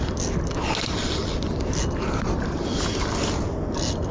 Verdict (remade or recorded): recorded